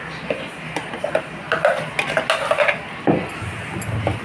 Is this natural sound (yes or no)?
yes